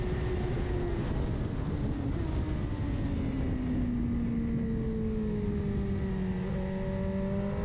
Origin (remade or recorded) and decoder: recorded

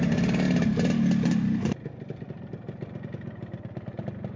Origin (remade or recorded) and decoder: recorded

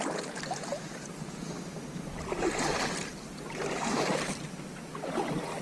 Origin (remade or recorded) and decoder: recorded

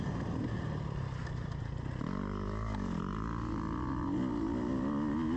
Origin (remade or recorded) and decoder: recorded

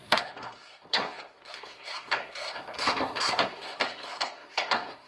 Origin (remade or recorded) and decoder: remade, codec, SNAC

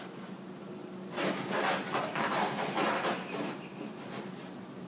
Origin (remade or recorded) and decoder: recorded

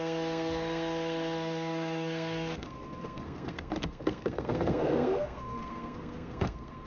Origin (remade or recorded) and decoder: remade, codec, SNAC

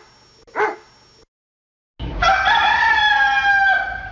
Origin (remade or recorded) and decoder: recorded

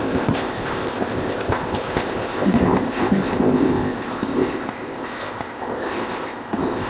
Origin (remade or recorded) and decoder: remade, codec, ZipCodec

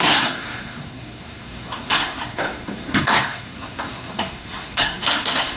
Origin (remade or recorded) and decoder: remade, codec, SNAC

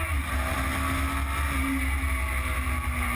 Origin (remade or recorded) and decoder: recorded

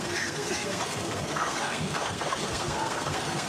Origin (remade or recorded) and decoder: remade, codec, SNAC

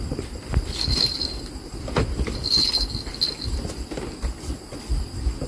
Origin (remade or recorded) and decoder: recorded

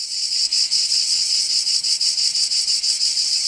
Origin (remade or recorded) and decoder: remade, vocoder, WaveNeXt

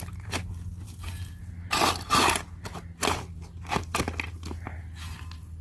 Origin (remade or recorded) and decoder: recorded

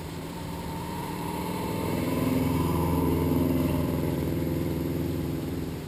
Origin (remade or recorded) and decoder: remade, vocoder, BigVGAN v2